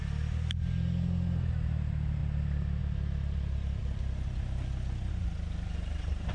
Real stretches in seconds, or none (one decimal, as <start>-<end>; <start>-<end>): 0.0-6.3